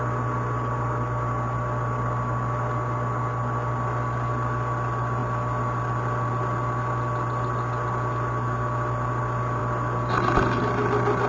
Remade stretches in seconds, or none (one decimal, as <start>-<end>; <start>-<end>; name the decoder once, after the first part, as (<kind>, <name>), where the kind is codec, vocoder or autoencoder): none